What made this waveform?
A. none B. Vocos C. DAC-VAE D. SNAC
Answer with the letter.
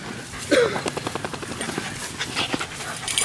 A